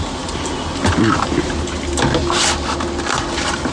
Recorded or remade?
recorded